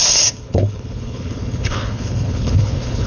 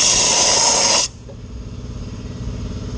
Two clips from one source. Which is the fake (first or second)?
first